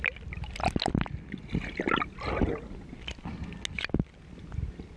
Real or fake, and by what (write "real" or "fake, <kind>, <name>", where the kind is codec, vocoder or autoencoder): real